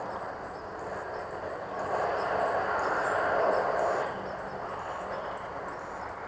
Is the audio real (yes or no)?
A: yes